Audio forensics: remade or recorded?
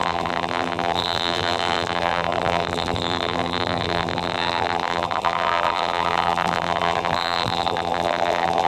remade